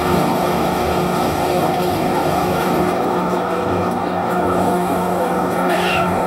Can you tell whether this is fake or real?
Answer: fake